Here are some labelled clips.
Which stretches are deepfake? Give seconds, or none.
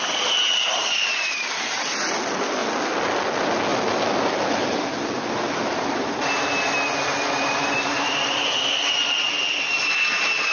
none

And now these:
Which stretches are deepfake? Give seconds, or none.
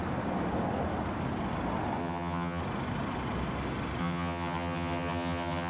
2.0-2.6; 4.0-5.7